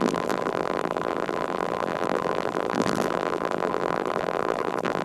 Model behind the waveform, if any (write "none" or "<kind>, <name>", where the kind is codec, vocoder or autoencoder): vocoder, BigVGAN v2